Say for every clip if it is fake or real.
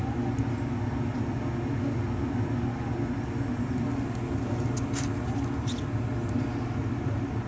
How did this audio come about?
real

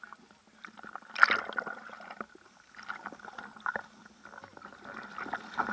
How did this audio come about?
real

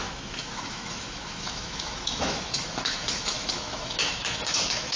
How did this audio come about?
fake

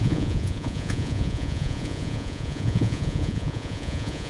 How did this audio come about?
fake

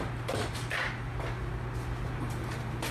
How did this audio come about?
real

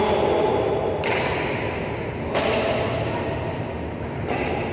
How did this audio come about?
real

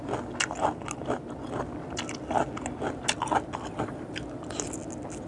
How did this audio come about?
real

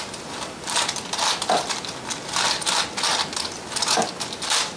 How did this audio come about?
real